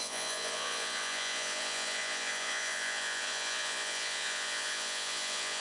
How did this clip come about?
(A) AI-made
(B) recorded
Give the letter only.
A